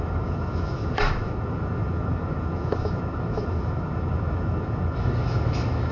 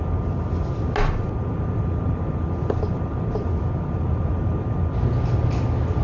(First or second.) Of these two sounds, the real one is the second